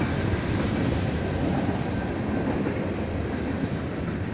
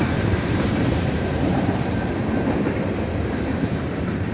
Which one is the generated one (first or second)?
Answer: second